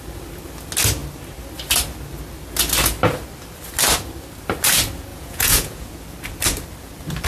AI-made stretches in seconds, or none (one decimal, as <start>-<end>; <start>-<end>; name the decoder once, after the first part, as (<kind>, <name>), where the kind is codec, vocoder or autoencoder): 5.1-5.9 (vocoder, Vocos)